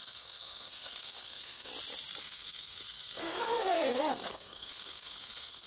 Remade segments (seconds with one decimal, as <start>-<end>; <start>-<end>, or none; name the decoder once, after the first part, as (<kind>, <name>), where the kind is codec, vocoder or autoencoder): 0.0-1.7 (codec, SNAC); 2.2-5.7